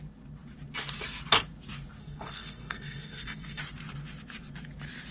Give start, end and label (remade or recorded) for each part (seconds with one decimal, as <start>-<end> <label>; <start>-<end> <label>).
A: 0.0-2.0 recorded; 2.0-3.6 remade; 3.6-5.1 recorded